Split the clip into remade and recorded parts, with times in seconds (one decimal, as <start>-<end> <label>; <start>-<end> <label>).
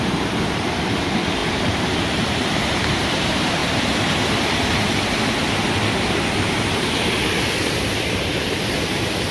0.0-3.6 remade; 3.6-8.8 recorded; 8.8-9.3 remade